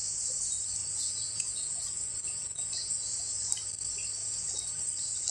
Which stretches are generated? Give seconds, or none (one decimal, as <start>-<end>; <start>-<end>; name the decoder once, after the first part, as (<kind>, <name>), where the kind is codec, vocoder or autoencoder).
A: 0.8-3.3 (vocoder, Vocos); 4.2-4.8